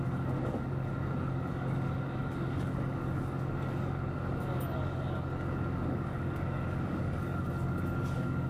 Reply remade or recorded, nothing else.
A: remade